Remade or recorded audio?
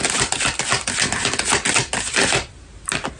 recorded